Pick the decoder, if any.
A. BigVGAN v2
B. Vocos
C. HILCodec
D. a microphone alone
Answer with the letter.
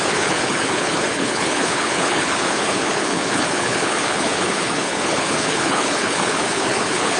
C